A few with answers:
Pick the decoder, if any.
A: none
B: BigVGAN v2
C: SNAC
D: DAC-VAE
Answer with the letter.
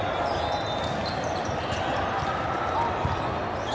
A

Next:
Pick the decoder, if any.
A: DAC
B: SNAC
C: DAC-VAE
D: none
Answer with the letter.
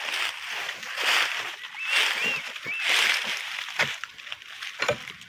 D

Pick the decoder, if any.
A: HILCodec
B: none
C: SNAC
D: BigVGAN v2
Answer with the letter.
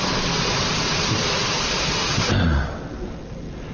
B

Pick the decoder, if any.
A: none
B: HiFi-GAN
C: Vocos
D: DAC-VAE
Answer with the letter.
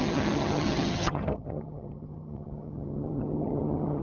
B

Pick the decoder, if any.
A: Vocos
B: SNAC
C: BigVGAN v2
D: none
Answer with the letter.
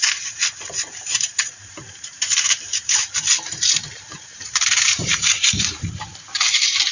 C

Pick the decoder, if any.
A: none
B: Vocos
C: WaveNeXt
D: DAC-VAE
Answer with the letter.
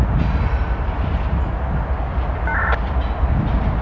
A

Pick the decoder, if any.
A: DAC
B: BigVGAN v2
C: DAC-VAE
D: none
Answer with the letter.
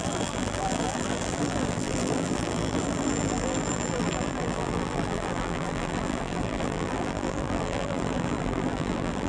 B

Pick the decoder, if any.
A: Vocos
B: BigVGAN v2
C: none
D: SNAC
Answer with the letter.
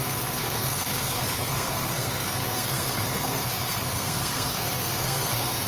D